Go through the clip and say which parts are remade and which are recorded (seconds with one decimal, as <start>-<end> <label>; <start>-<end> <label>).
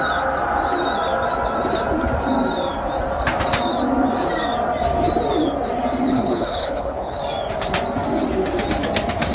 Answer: 0.0-6.1 recorded; 6.1-7.2 remade; 7.2-9.3 recorded